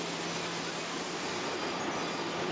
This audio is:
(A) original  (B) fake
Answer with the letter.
A